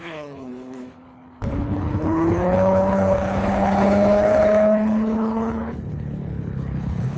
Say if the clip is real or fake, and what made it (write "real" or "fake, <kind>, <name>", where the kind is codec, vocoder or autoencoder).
fake, codec, HILCodec